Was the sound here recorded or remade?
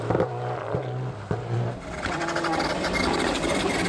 recorded